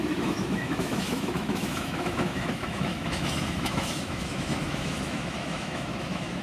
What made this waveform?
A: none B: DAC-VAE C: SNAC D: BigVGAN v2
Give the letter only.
B